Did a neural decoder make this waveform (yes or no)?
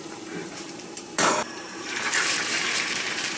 yes